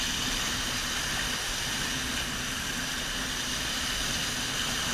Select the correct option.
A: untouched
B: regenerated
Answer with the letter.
A